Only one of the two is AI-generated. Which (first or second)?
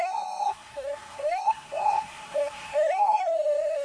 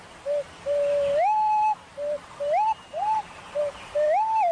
first